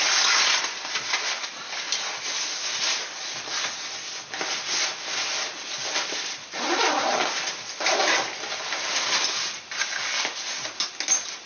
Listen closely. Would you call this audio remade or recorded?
recorded